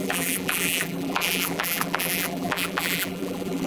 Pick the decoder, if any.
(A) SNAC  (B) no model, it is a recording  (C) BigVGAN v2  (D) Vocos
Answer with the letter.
C